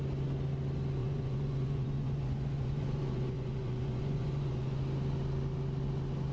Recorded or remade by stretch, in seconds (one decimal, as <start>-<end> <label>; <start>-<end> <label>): 0.0-1.0 recorded; 1.0-4.8 remade; 4.8-6.3 recorded